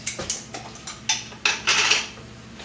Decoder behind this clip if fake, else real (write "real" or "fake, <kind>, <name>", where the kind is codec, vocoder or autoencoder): real